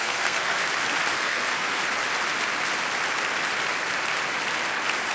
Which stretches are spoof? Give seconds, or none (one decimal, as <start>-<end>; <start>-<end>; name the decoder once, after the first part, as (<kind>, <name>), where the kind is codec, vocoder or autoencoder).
0.0-0.6 (codec, SNAC); 1.1-1.8